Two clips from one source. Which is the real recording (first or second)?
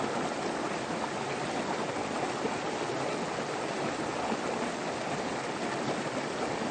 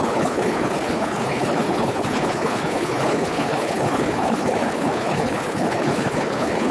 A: first